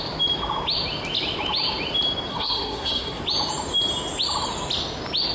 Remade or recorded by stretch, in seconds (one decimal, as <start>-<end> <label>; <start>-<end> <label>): 0.0-2.3 recorded; 2.3-3.2 remade; 3.2-5.3 recorded